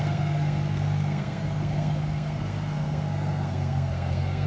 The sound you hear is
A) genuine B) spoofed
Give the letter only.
B